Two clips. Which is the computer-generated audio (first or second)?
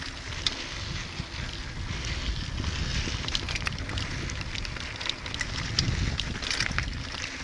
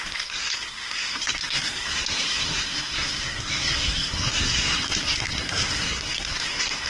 second